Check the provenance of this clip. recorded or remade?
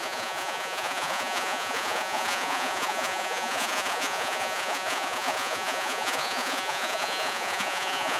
remade